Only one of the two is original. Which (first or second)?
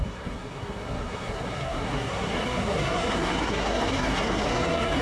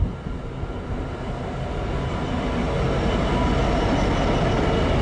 second